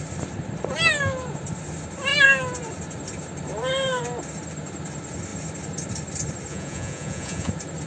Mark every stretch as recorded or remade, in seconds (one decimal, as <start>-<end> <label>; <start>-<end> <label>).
0.0-6.5 recorded; 6.5-7.5 remade; 7.5-7.9 recorded